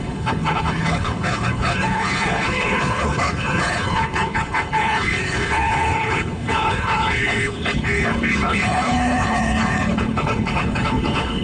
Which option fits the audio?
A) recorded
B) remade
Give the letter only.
B